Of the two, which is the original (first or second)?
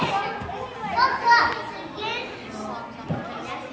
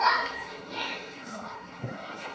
first